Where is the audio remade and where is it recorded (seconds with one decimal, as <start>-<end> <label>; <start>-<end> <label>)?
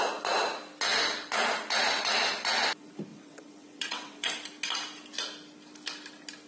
0.0-3.1 recorded; 3.1-4.3 remade; 4.3-6.5 recorded